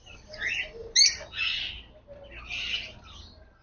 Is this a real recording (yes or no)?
yes